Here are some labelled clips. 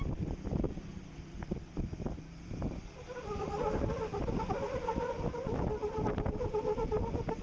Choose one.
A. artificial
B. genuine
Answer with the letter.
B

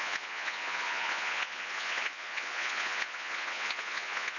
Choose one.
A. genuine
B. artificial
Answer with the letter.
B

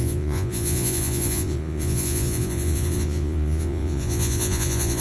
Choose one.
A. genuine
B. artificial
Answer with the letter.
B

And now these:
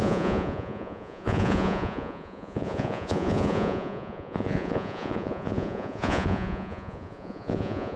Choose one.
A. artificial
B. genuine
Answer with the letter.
A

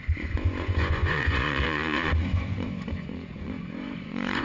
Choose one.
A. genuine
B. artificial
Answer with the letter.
B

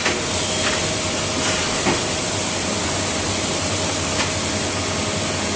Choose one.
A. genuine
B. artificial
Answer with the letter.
A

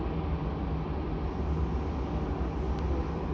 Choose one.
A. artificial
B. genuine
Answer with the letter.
B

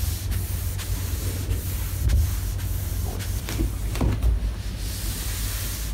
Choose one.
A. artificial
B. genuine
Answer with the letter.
B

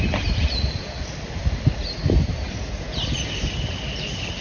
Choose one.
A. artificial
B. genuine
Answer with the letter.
B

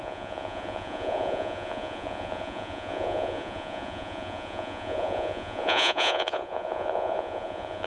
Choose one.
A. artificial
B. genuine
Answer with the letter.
A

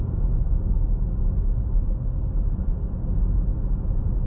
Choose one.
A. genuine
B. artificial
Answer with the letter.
A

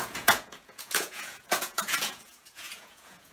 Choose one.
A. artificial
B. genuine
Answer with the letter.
A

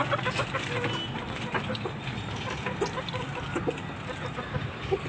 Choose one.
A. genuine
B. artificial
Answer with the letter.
A